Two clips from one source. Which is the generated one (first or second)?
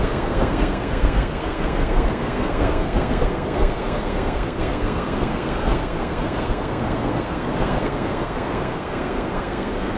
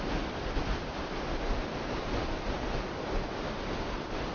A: first